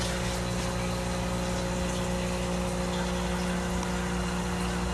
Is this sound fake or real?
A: real